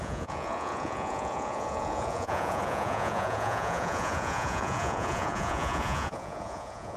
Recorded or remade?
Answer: remade